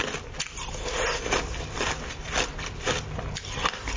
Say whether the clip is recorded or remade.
recorded